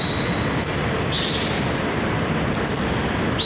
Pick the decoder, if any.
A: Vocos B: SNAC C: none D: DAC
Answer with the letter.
C